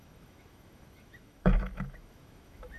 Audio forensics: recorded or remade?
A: remade